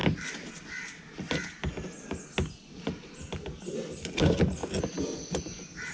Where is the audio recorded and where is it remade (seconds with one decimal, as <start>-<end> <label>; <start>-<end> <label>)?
0.0-5.9 recorded